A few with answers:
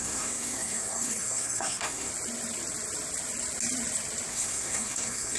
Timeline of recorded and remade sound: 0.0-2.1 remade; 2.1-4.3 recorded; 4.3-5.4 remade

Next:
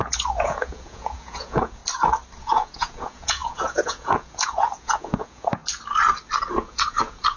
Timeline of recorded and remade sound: 0.0-1.8 remade; 1.8-2.4 recorded; 2.4-5.6 remade; 5.6-6.5 recorded; 6.5-7.4 remade

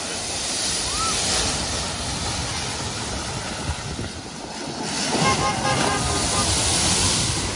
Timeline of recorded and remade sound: 0.0-7.6 recorded

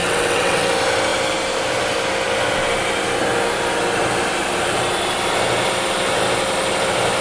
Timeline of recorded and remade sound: 0.0-0.7 remade; 0.7-7.2 recorded

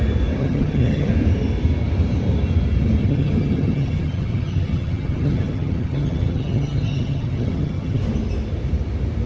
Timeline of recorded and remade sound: 0.0-0.4 recorded; 0.4-1.1 remade; 1.1-3.0 recorded; 3.0-8.0 remade; 8.0-9.3 recorded

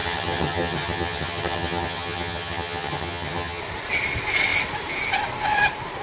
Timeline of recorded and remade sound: 0.0-3.6 remade; 3.6-6.0 recorded

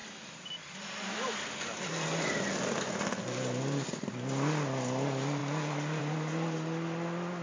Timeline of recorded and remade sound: 0.0-7.4 recorded

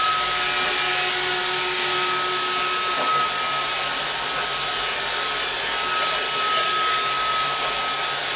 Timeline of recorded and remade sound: 0.0-8.4 recorded